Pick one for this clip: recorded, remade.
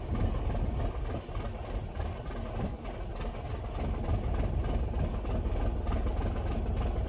recorded